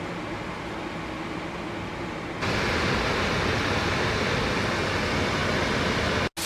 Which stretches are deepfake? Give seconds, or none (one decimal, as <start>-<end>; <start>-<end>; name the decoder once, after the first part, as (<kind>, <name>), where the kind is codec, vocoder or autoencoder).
none